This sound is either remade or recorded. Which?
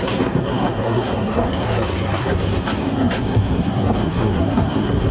remade